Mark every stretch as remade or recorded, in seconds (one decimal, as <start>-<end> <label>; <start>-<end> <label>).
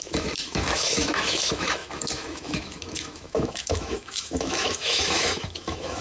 0.0-6.0 remade